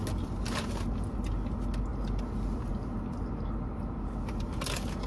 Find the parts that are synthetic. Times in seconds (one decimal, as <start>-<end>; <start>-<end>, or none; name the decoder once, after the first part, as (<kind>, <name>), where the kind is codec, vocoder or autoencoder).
none

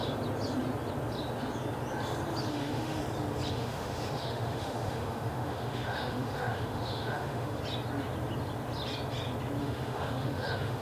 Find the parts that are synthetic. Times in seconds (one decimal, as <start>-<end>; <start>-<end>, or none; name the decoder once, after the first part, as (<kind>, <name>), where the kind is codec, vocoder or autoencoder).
2.5-3.0 (autoencoder, DAC-VAE); 3.5-7.6; 9.6-10.8

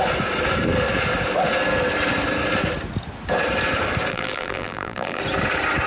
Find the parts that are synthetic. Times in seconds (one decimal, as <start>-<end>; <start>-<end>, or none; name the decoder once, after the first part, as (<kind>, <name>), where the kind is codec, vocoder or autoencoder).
4.1-5.2 (vocoder, BigVGAN v2)

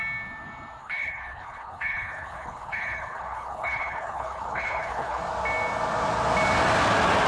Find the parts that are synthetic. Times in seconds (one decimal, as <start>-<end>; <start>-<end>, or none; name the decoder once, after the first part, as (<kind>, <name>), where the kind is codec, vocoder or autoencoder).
0.8-5.2 (codec, HILCodec)

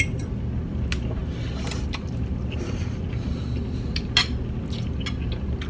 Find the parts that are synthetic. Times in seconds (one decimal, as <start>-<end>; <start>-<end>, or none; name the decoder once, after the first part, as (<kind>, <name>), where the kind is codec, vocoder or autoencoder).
none

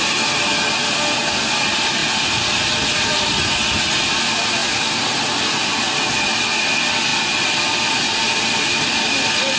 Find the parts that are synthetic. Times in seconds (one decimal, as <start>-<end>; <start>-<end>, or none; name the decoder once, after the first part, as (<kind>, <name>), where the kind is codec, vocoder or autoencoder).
none

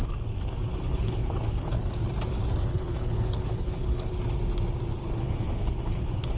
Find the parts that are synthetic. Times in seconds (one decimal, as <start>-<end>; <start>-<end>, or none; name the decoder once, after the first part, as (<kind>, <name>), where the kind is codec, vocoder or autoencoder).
0.7-1.8 (codec, HILCodec); 2.7-4.1; 5.0-6.4

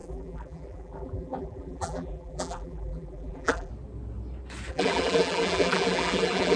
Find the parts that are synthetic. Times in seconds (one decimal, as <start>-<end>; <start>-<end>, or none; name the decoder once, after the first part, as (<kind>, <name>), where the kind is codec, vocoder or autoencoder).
0.0-3.7 (vocoder, BigVGAN v2); 4.7-6.6